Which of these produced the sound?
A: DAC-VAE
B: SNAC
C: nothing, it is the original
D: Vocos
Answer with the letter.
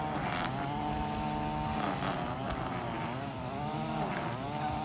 C